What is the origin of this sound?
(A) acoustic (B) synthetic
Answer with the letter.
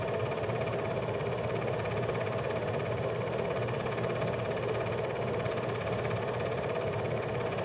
A